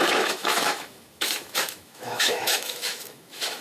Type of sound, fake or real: fake